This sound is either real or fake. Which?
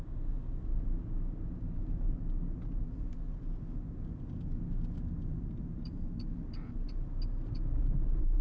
real